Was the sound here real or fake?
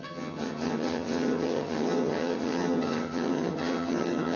fake